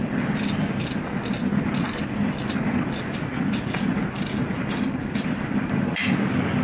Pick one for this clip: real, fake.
real